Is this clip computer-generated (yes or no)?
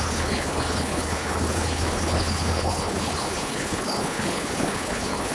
yes